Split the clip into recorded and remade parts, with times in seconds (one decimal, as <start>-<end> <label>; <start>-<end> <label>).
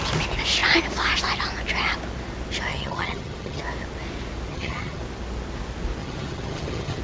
0.0-2.7 recorded; 2.7-3.6 remade; 3.6-4.5 recorded; 4.5-5.0 remade; 5.0-6.0 recorded; 6.0-7.0 remade